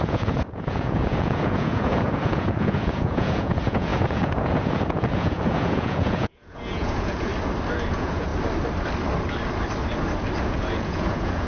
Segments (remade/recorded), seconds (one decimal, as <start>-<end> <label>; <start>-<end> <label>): 0.0-7.3 remade; 7.3-7.9 recorded; 7.9-8.3 remade; 8.3-10.4 recorded; 10.4-11.5 remade